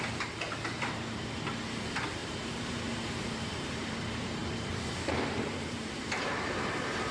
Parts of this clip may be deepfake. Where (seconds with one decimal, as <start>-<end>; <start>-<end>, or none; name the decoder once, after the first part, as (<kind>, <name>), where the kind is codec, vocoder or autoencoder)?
2.2-3.9 (vocoder, BigVGAN v2); 4.4-7.1